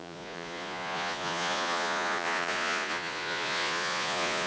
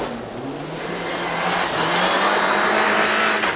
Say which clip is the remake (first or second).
first